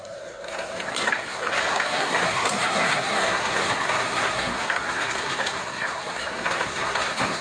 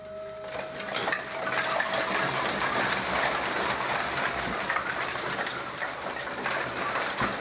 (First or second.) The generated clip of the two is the first